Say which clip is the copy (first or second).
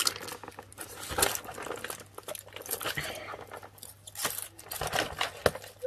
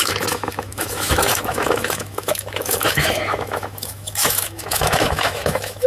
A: second